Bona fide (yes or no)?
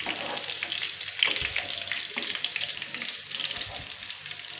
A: yes